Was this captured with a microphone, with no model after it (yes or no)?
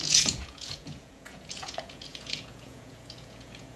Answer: no